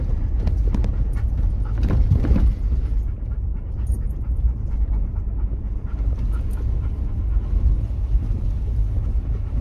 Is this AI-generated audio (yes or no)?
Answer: yes